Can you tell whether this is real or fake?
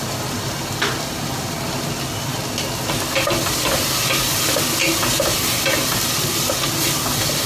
real